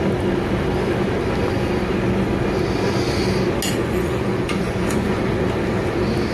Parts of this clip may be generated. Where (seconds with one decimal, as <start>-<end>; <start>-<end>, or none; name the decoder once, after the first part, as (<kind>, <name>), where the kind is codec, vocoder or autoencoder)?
3.8-5.2 (vocoder, Vocos)

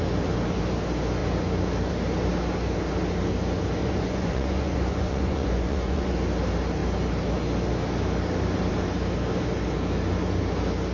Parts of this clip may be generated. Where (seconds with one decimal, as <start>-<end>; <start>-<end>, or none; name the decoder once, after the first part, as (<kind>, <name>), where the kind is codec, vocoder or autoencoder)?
3.8-6.1 (vocoder, Vocos)

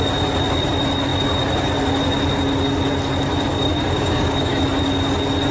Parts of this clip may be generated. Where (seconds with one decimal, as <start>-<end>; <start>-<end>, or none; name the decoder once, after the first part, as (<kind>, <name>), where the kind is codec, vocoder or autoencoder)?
3.5-4.5 (codec, DAC)